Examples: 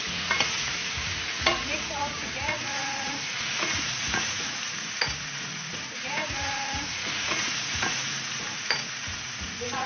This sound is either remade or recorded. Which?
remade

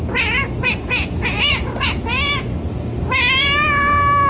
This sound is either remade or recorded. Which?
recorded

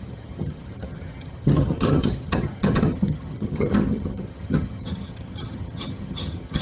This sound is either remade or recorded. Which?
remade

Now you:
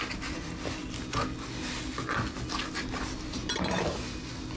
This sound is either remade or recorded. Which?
recorded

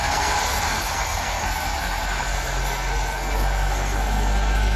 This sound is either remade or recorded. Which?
remade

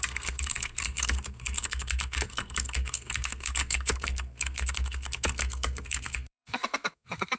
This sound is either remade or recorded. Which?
remade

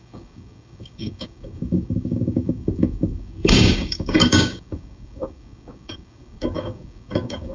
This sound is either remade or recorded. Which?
remade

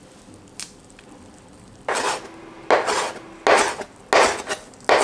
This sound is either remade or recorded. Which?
recorded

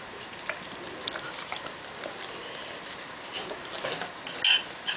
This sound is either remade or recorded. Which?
recorded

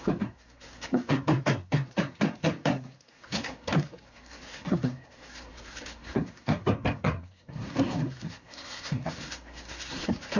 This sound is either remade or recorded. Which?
remade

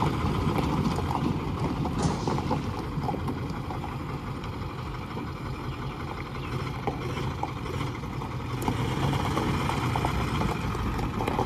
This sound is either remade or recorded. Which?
recorded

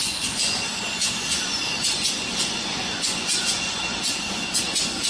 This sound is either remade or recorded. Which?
remade